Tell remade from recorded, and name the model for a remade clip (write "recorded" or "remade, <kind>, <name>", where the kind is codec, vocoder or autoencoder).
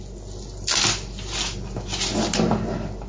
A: recorded